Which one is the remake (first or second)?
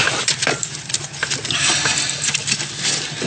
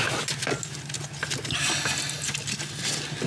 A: first